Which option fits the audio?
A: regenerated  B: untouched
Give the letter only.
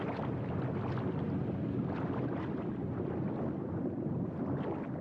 B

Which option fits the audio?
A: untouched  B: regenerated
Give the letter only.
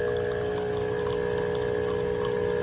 A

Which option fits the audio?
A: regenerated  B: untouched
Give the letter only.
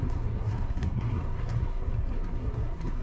A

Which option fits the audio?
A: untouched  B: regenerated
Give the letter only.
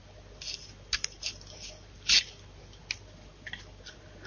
A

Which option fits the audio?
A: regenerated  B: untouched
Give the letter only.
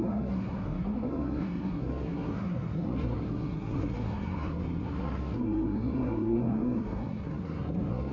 A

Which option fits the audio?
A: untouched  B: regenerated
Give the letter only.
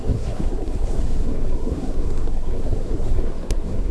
B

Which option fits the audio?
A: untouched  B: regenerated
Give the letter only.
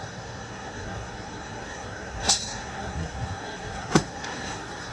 B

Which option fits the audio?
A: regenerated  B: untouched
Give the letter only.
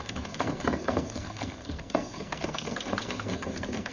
A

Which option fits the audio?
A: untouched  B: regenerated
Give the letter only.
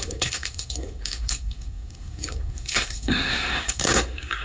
B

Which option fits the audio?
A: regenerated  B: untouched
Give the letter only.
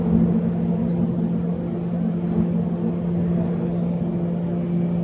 B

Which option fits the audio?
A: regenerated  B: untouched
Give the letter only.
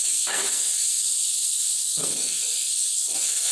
A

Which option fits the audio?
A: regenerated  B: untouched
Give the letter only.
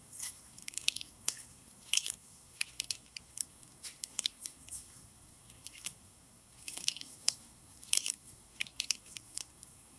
A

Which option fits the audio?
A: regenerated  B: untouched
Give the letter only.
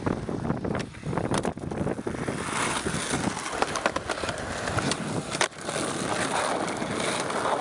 B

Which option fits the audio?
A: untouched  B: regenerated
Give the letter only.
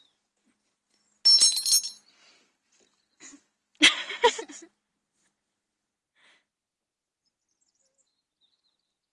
A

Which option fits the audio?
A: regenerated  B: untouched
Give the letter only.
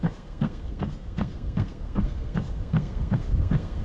A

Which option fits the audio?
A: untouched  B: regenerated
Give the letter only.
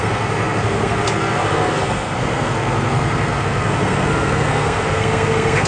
B